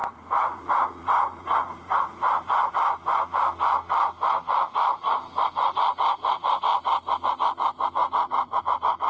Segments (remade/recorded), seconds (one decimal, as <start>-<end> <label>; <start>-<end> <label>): 0.0-2.7 remade; 2.7-8.0 recorded; 8.0-8.6 remade; 8.6-9.1 recorded